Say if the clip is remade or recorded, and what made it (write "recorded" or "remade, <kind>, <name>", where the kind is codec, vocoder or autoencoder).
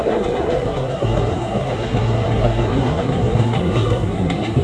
remade, codec, SNAC